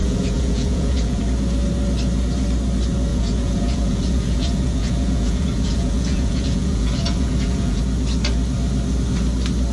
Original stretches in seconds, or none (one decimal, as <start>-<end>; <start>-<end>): 1.2-3.1; 7.8-9.7